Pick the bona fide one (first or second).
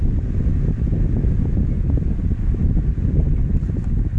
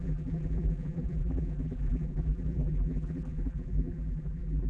first